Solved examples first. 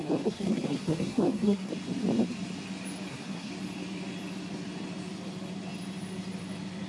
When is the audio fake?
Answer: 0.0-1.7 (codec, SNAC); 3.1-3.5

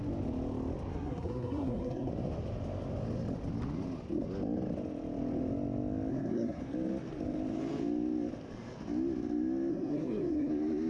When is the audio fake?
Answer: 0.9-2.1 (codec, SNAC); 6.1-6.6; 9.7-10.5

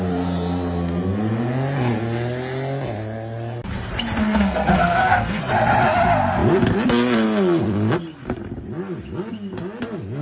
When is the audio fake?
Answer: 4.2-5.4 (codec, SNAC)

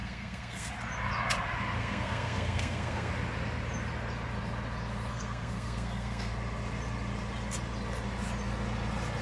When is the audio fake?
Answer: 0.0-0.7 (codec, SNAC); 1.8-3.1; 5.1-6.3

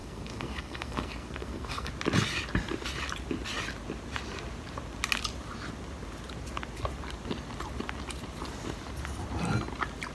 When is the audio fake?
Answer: 0.0-1.9 (codec, SNAC)

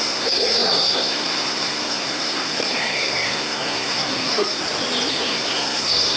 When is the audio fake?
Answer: 0.0-4.6 (codec, SNAC); 5.1-6.2

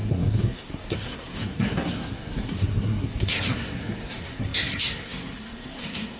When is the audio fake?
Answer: 0.0-6.2 (codec, SNAC)